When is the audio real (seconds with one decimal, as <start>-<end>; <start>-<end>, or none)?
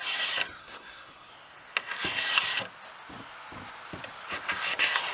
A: 0.0-0.6; 1.3-5.1